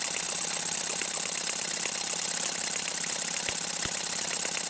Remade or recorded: recorded